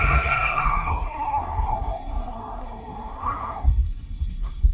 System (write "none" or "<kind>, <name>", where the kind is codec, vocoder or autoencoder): codec, SNAC